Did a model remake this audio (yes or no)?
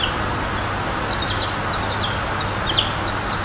no